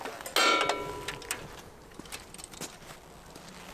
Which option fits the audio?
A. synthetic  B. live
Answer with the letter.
B